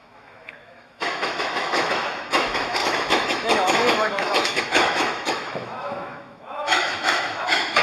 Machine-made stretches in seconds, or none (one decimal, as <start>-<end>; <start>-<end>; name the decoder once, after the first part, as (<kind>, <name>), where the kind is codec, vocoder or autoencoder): 0.0-7.8 (autoencoder, DAC-VAE)